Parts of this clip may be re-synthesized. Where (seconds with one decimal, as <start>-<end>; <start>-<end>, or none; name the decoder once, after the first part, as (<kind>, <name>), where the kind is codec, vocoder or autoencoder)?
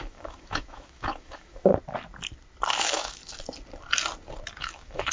0.0-1.7 (autoencoder, DAC-VAE); 2.8-3.2; 4.6-5.1